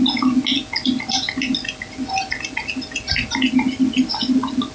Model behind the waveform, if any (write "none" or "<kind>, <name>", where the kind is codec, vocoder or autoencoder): none